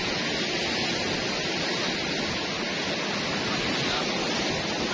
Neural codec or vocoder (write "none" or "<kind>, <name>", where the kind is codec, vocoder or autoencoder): none